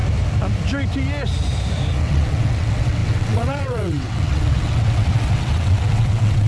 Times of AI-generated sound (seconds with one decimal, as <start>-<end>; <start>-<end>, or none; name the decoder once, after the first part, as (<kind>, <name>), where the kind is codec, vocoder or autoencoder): 2.0-6.5 (vocoder, WaveNeXt)